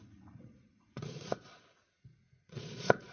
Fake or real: fake